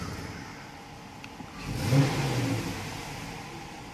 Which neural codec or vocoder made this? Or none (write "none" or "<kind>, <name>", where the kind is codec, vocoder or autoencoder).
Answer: none